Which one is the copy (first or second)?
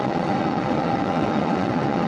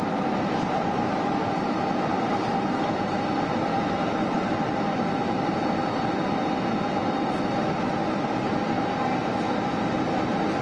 first